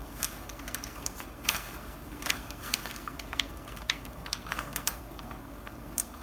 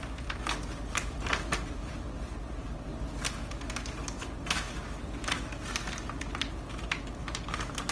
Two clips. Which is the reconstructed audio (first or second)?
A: first